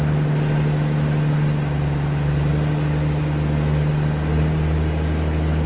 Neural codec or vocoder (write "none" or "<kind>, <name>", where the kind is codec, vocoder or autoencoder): none